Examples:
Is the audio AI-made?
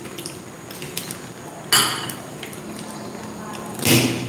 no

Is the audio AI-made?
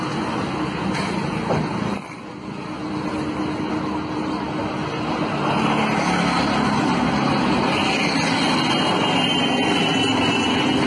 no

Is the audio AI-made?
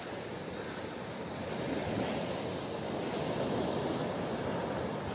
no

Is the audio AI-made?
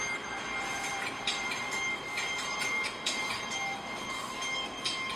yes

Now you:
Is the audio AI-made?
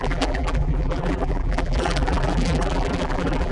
yes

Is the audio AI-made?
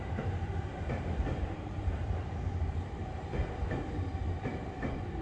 yes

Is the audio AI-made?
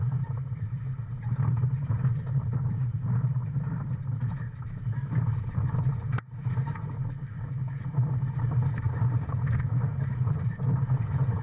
yes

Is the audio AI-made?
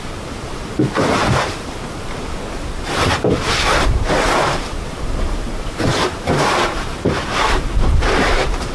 yes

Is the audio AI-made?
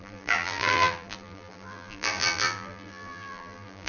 yes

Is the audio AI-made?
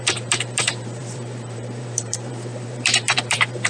yes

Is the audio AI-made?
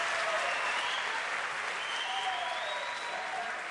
no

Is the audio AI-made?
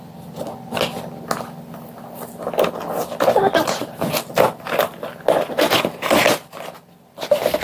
no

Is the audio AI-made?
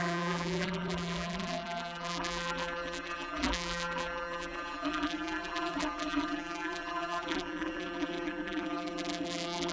yes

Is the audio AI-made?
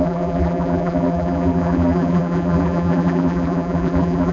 yes